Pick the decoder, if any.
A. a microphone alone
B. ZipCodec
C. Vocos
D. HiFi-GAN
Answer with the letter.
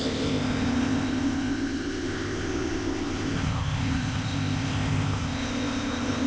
B